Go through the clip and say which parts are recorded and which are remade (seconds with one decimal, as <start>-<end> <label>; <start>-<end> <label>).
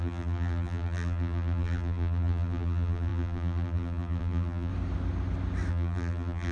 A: 0.0-4.7 remade; 4.7-5.7 recorded; 5.7-6.5 remade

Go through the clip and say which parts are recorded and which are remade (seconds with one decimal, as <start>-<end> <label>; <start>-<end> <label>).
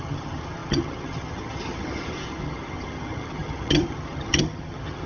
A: 0.0-5.1 remade